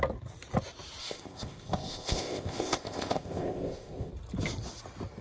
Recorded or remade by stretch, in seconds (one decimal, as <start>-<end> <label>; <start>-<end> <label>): 0.0-1.0 recorded; 1.0-4.1 remade; 4.1-5.2 recorded